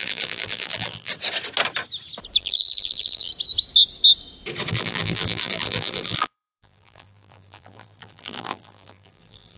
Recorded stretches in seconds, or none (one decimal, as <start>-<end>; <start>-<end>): 1.1-2.4; 3.3-4.7